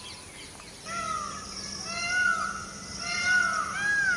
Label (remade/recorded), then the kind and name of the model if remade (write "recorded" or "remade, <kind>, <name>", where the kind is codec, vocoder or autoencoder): recorded